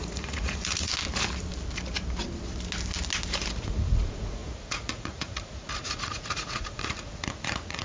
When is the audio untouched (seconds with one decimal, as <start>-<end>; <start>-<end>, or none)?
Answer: 0.9-3.5